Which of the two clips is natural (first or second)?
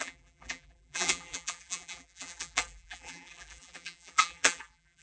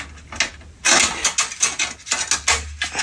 second